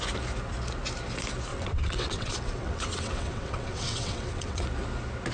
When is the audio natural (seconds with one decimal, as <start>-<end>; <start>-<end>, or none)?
0.0-1.5; 4.6-5.3